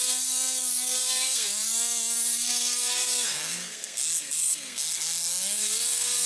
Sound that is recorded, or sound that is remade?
remade